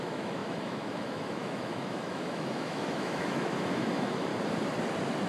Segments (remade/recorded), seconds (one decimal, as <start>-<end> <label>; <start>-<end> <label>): 0.0-4.3 remade; 4.3-5.3 recorded